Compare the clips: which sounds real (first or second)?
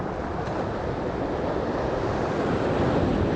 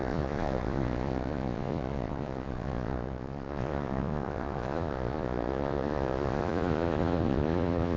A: first